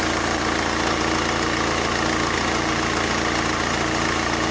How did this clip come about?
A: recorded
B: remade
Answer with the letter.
A